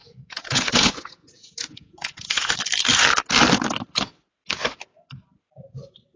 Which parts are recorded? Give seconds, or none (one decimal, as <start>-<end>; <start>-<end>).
2.5-6.2